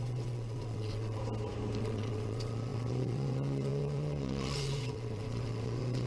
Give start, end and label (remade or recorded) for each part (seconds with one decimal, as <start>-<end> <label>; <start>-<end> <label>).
0.0-1.2 remade; 1.2-1.8 recorded; 1.8-6.1 remade